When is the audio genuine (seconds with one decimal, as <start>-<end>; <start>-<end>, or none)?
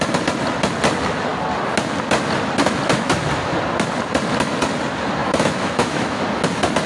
0.0-5.2; 6.2-6.9